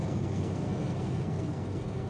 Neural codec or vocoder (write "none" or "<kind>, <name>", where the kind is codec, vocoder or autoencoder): codec, SNAC